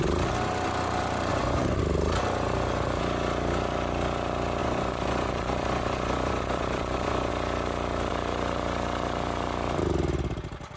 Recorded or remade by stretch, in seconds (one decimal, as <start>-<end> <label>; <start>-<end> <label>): 0.0-1.3 recorded; 1.3-1.8 remade; 1.8-4.6 recorded; 4.6-7.3 remade; 7.3-10.8 recorded